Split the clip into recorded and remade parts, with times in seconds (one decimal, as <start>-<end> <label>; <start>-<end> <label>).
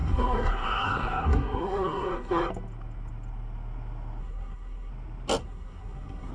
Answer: 0.0-2.5 remade; 2.5-4.2 recorded; 4.2-4.9 remade; 4.9-5.4 recorded; 5.4-6.3 remade